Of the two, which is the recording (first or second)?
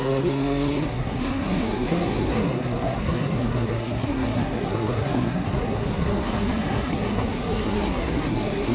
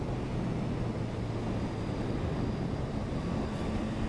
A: second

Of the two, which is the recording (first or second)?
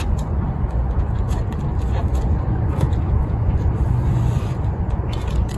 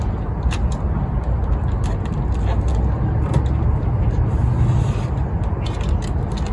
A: second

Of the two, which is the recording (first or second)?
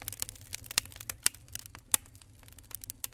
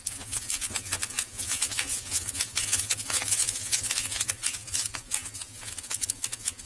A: first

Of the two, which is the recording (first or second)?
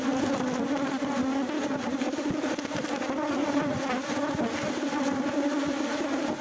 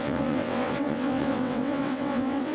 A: first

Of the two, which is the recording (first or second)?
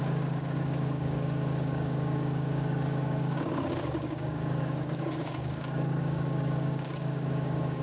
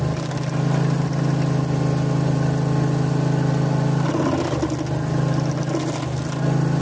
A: second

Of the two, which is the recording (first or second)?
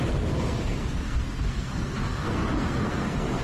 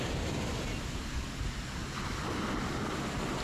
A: second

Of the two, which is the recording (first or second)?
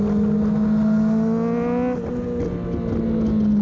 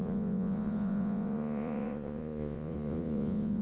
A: first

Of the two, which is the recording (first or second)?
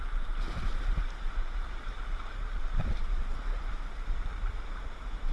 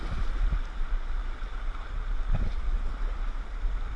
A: second